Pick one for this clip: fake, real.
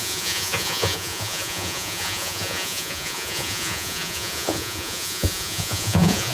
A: fake